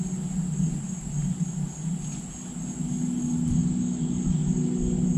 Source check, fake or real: real